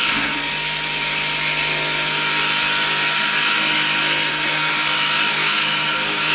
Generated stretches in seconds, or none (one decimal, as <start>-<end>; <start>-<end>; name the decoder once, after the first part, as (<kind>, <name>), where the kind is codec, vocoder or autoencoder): 0.0-0.5 (codec, SNAC); 4.3-4.7; 5.3-6.3